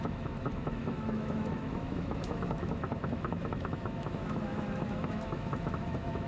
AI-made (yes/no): yes